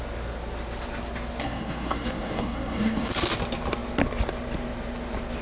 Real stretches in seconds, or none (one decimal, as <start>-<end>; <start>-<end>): 0.0-1.4; 3.1-5.4